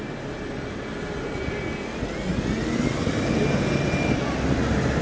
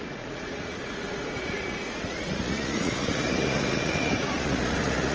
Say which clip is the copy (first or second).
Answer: second